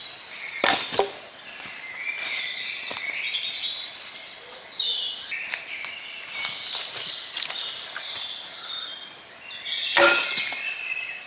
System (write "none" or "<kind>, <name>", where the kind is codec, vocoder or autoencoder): none